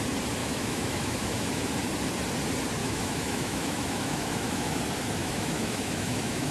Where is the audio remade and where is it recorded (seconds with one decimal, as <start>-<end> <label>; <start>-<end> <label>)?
0.0-0.4 recorded; 0.4-1.7 remade; 1.7-2.8 recorded; 2.8-4.8 remade; 4.8-5.2 recorded; 5.2-6.5 remade